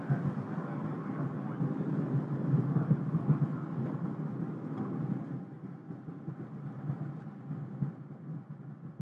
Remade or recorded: recorded